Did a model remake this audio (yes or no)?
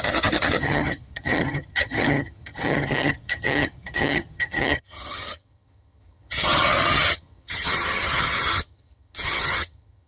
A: yes